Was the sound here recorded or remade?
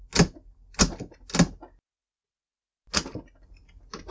recorded